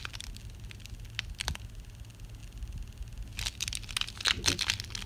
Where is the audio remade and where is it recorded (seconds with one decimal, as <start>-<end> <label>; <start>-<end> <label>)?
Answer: 0.0-5.1 recorded